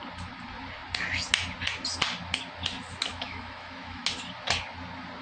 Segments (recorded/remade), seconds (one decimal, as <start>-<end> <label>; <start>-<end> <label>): 0.0-3.1 recorded; 3.1-4.0 remade; 4.0-5.2 recorded